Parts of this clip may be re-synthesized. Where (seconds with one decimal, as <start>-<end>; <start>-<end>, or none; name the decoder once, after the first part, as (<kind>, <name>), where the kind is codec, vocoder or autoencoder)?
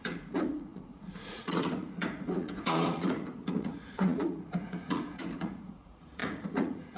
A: 0.0-7.0 (vocoder, Vocos)